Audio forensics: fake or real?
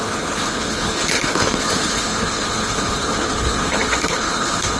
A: fake